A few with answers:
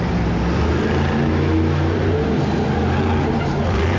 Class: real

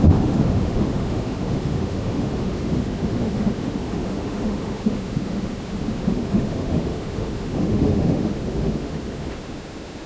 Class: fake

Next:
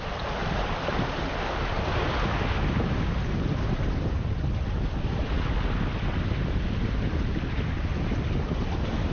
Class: real